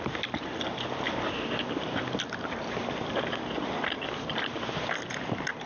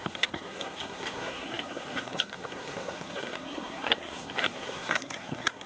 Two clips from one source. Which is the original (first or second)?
first